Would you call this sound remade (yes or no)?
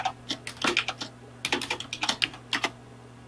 no